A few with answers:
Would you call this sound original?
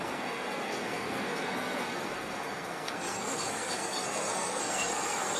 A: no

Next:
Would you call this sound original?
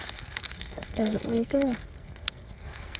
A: no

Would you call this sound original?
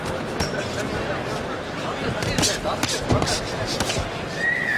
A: yes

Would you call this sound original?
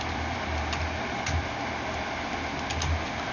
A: yes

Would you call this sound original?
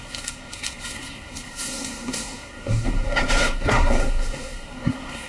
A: no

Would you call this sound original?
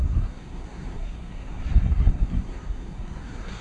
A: no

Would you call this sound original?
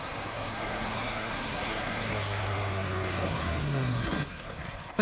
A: no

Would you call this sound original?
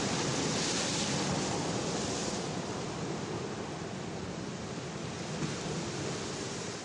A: yes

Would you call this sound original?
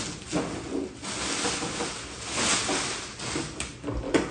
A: yes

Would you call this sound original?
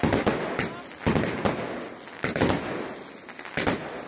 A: yes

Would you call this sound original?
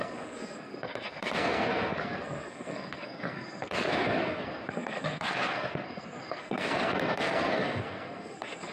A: no